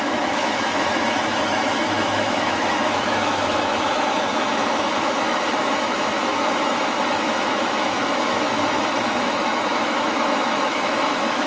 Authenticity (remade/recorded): remade